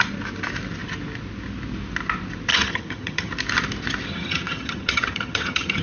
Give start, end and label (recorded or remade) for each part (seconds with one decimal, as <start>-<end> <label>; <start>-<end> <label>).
0.0-2.5 recorded; 2.5-3.3 remade; 3.3-4.1 recorded; 4.1-5.8 remade